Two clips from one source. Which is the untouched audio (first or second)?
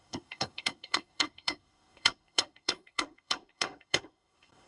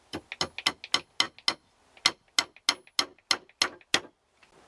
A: second